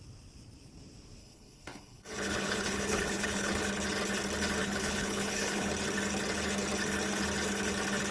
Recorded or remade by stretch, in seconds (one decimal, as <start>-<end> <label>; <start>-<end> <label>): 0.0-1.2 recorded; 1.2-3.6 remade; 3.6-4.6 recorded; 4.6-5.7 remade; 5.7-8.1 recorded